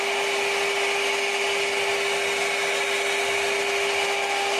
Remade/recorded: recorded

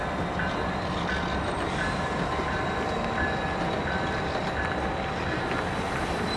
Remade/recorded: recorded